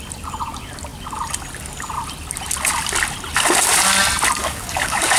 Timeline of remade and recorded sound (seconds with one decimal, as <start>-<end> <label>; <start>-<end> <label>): 0.0-4.4 recorded; 4.4-5.2 remade